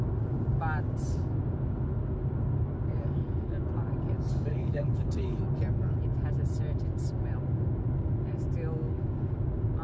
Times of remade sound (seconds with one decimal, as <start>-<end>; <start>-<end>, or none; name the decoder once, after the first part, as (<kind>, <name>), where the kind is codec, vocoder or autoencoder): 4.5-5.4 (codec, HILCodec)